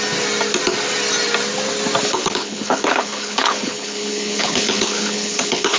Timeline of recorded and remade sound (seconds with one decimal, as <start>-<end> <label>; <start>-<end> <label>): 0.0-2.0 recorded; 2.0-5.8 remade